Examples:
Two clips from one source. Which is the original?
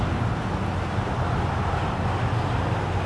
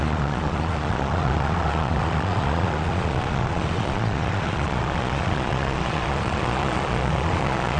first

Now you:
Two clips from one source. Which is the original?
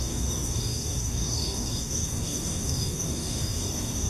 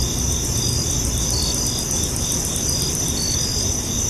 second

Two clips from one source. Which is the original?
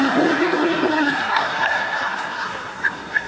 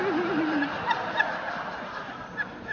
second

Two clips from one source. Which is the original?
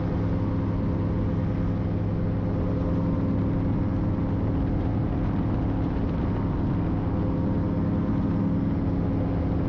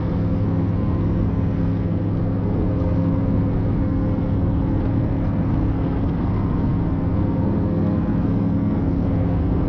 first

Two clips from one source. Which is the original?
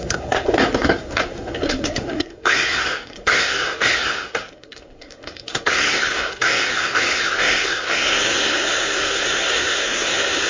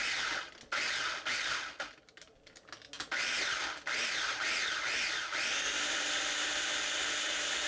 second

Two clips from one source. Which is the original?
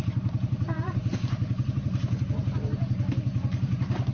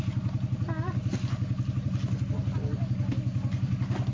second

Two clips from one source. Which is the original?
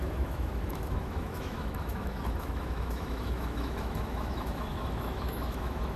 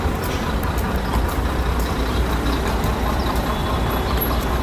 second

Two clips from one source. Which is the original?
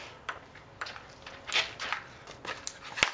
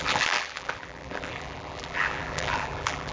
first